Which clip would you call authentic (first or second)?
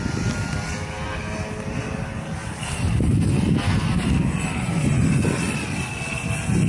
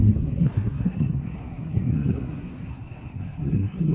first